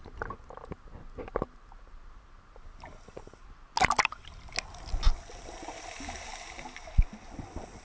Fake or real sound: real